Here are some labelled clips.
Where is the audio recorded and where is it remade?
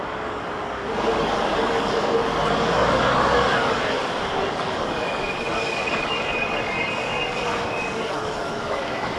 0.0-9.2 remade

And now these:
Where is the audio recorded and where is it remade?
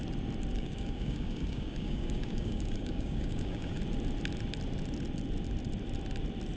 0.0-0.5 recorded; 0.5-3.8 remade; 3.8-6.6 recorded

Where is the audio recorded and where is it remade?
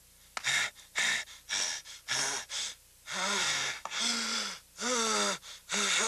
0.0-3.4 recorded; 3.4-4.0 remade; 4.0-6.1 recorded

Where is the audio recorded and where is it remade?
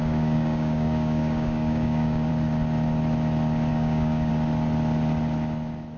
0.0-2.3 remade; 2.3-3.7 recorded; 3.7-4.3 remade; 4.3-6.0 recorded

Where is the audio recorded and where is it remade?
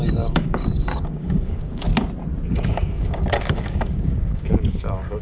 0.0-1.9 remade; 1.9-2.5 recorded; 2.5-5.2 remade